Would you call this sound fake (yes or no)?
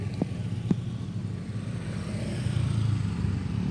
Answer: no